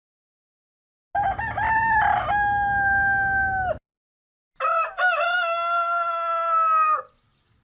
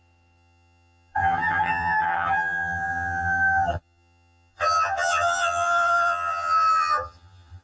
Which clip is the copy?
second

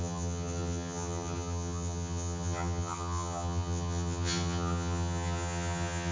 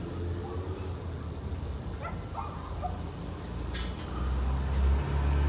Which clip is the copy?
first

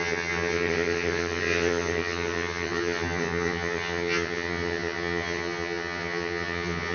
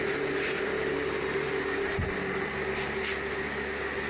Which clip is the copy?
first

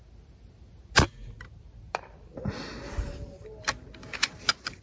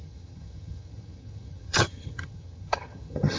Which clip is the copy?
second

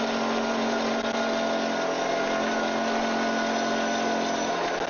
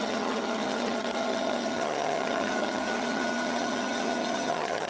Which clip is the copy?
second